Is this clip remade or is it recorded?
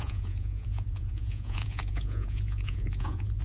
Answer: remade